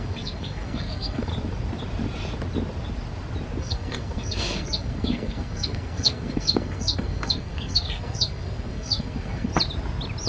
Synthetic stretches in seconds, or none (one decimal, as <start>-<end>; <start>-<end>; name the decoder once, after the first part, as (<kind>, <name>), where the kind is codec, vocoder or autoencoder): 0.0-1.3 (codec, SNAC); 3.6-9.5